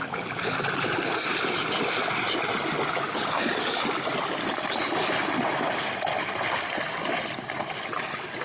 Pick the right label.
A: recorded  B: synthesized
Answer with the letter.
A